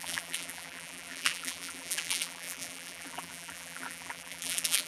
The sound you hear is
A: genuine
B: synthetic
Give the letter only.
B